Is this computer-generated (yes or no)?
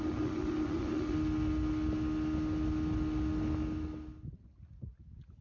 no